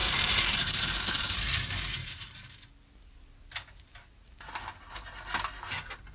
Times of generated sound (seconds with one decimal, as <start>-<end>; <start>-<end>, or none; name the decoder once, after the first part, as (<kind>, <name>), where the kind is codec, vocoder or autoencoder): 0.0-1.0 (vocoder, BigVGAN v2); 2.0-2.6